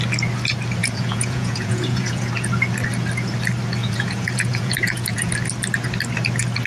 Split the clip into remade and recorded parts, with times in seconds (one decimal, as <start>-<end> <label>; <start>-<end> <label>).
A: 0.0-0.8 recorded; 0.8-2.3 remade; 2.3-3.8 recorded; 3.8-5.3 remade; 5.3-6.7 recorded